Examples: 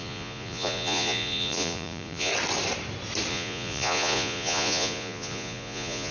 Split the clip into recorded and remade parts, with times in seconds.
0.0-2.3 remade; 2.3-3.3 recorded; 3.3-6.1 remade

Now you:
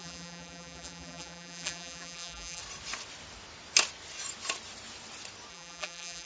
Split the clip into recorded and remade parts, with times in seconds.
0.0-2.6 remade; 2.6-5.5 recorded; 5.5-6.3 remade